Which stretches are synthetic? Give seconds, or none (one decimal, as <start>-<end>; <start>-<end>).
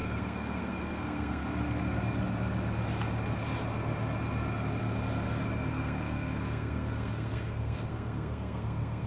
0.0-1.4; 5.7-9.1